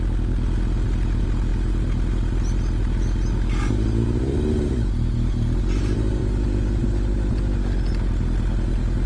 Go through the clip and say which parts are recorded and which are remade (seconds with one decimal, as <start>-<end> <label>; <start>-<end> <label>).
0.0-6.2 recorded; 6.2-6.8 remade; 6.8-9.1 recorded